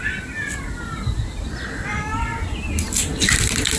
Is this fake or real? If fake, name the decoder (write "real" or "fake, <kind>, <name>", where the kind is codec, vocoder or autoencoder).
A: real